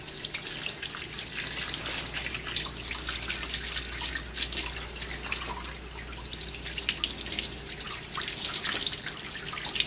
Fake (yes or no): no